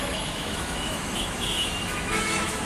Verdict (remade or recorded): remade